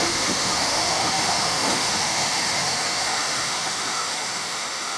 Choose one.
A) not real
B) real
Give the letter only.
A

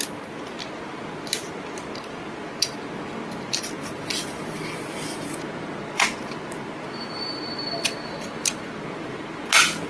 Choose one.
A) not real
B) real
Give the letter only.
B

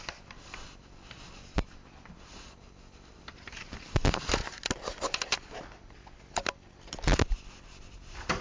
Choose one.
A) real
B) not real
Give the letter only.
A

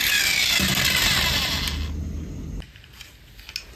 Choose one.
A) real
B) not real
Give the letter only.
A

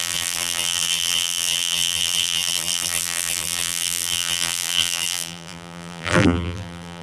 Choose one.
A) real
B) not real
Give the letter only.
B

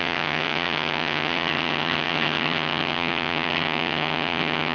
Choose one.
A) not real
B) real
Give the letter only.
A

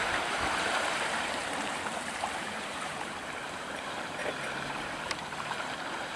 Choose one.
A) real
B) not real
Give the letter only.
B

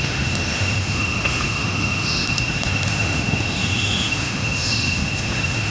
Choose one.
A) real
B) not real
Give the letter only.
B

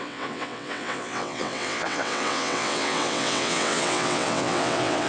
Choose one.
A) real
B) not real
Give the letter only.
B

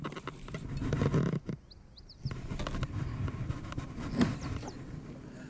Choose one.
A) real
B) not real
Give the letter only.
A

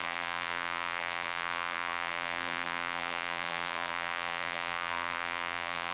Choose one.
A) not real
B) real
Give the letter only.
A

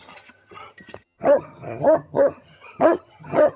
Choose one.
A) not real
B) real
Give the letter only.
A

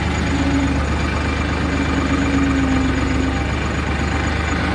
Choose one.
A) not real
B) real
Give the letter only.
B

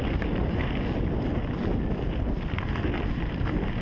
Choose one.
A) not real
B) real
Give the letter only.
B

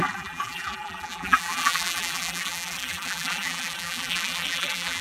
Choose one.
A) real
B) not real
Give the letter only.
B